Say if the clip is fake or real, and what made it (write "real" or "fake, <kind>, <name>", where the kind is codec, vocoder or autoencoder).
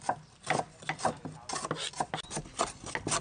real